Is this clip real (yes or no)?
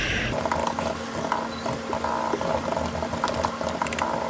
yes